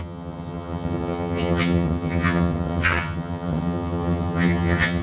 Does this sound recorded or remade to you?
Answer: remade